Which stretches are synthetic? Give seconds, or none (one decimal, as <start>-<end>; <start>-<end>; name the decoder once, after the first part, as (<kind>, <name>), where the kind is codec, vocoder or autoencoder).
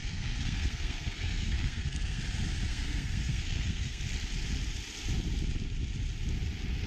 0.0-2.2 (codec, SNAC); 2.7-4.0